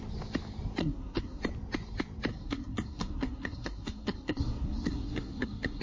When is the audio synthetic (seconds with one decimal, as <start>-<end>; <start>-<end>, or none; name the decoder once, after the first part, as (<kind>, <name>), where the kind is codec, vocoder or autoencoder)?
0.8-1.4 (codec, SNAC); 2.3-5.8